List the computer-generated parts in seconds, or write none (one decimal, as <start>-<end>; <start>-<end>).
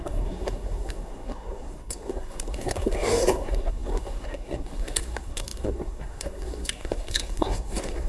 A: 0.0-8.1